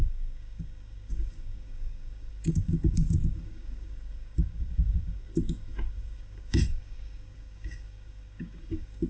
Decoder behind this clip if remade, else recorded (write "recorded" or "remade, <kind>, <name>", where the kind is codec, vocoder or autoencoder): remade, codec, DAC